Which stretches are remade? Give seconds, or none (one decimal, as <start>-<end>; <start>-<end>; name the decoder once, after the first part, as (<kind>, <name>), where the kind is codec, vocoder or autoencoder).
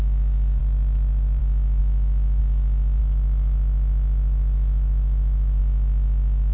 0.6-1.4 (autoencoder, DAC-VAE); 3.0-5.6